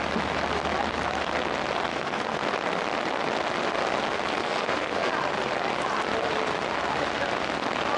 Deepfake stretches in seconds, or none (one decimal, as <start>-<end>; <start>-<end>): 1.9-2.5; 4.4-5.1